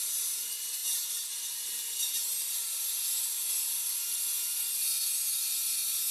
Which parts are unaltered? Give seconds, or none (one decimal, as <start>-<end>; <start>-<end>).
0.0-6.1